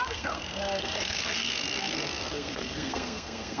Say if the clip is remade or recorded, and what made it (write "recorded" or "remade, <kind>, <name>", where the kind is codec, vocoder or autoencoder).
remade, codec, SNAC